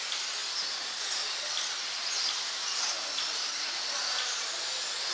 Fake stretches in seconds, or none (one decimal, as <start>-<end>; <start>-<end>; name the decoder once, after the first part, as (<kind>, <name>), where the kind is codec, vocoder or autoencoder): none